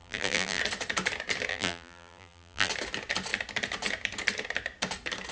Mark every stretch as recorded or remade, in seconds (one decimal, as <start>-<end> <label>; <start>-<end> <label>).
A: 0.0-0.6 remade; 0.6-1.5 recorded; 1.5-2.7 remade; 2.7-5.3 recorded